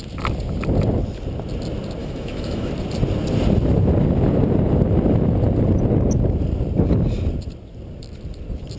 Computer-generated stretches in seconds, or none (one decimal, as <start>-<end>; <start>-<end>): 2.0-2.7